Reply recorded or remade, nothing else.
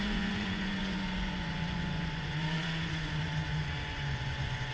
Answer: remade